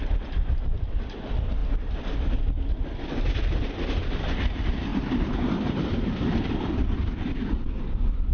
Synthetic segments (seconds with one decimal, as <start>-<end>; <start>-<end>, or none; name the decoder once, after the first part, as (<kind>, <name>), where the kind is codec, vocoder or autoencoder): 0.0-1.6 (vocoder, BigVGAN v2); 4.0-8.3